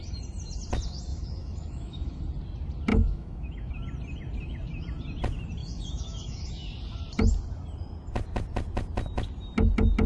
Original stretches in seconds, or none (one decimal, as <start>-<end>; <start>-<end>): 0.0-1.1; 2.2-2.9; 3.7-5.6; 6.5-10.1